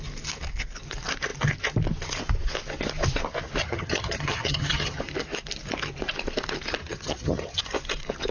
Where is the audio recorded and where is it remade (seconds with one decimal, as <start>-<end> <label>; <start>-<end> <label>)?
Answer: 0.0-3.6 recorded; 3.6-5.0 remade; 5.0-6.8 recorded; 6.8-7.6 remade; 7.6-8.3 recorded